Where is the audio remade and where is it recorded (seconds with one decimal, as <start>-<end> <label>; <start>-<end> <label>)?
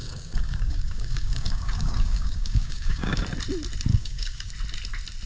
0.0-3.2 remade; 3.2-3.9 recorded; 3.9-4.5 remade; 4.5-5.3 recorded